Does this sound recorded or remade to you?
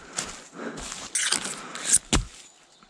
recorded